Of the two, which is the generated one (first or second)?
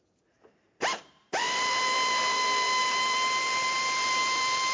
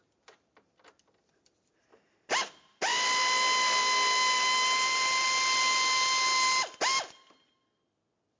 first